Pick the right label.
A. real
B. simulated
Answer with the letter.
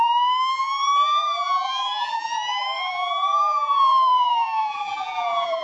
B